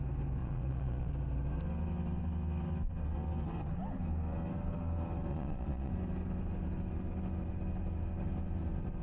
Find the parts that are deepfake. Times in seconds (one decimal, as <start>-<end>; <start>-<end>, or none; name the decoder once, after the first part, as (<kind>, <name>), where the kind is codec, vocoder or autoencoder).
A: 0.4-1.1 (vocoder, Vocos); 5.3-5.9